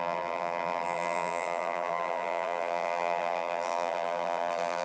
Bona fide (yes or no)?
no